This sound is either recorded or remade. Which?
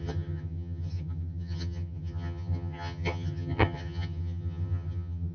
remade